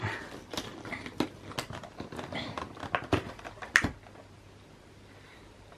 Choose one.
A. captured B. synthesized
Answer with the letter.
B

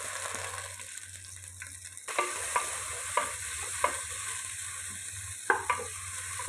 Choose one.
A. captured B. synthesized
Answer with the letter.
A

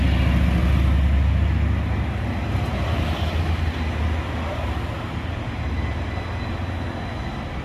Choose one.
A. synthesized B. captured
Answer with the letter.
B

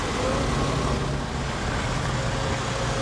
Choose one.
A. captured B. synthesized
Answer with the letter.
A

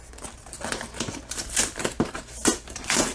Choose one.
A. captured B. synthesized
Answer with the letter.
A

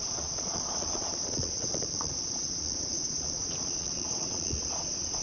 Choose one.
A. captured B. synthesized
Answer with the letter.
B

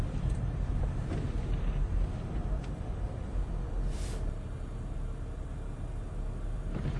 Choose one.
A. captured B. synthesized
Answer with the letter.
B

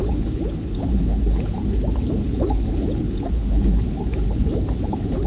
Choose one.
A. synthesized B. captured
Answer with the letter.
A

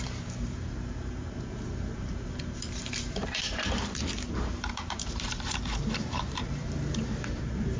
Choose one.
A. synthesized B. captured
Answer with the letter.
A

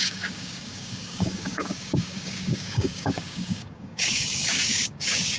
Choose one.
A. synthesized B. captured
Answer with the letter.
A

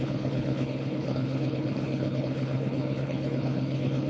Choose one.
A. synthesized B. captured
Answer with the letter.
A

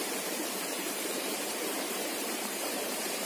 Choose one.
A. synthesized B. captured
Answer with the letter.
A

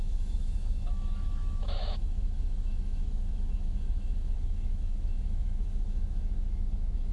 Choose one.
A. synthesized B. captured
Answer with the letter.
A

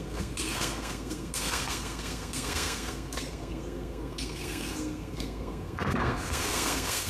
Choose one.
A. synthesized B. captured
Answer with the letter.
A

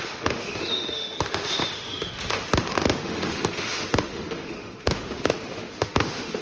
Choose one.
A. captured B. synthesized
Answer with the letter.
B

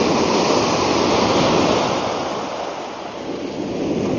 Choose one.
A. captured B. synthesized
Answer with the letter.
A